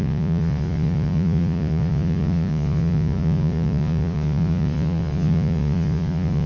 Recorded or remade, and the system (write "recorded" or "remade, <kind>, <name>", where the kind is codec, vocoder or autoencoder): remade, vocoder, Vocos